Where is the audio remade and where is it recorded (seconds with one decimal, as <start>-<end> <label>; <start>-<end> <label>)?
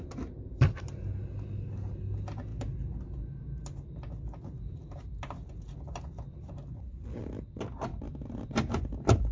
0.0-9.3 recorded